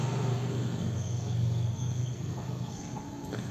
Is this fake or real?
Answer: fake